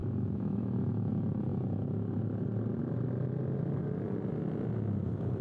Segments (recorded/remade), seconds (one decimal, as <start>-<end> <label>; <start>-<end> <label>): 0.0-1.1 remade; 1.1-5.4 recorded